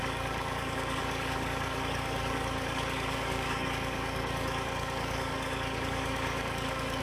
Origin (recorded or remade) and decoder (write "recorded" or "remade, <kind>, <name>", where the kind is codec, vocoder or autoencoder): remade, codec, DAC